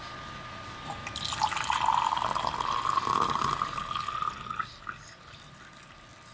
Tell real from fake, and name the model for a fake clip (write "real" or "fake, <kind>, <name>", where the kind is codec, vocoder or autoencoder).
real